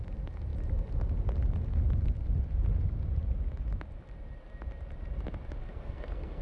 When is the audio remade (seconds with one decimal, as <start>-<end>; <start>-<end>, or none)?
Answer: 5.6-6.4